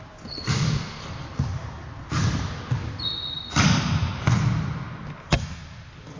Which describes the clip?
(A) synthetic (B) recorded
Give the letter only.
B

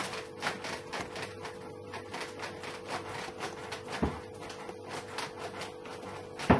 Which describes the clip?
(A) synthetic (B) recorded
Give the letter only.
B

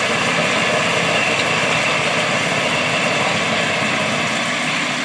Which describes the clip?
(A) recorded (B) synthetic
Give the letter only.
A